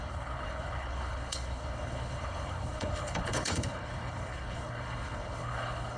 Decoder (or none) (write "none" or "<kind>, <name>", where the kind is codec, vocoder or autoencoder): codec, HILCodec